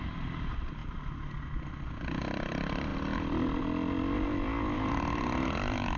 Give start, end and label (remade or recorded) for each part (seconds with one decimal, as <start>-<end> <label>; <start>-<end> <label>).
0.0-6.0 recorded